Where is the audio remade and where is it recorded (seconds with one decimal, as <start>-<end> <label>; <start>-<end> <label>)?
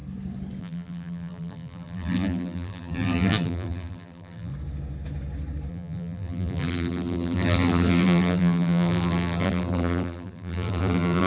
0.0-0.6 recorded; 0.6-4.5 remade; 4.5-5.7 recorded; 5.7-11.3 remade